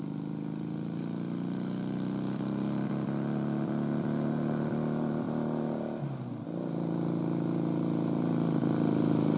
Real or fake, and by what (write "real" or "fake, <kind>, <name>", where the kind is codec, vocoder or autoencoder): real